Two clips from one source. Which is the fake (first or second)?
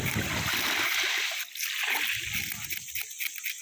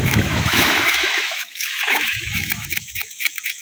second